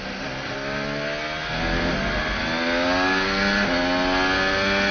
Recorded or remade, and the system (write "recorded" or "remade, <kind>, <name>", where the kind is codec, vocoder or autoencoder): recorded